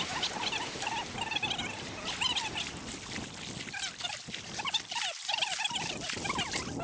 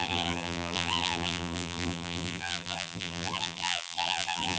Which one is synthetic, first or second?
second